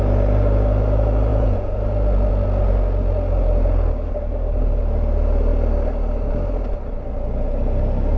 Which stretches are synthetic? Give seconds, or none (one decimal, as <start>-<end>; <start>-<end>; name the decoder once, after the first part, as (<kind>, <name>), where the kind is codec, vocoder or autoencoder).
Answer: 1.3-1.8 (vocoder, Vocos)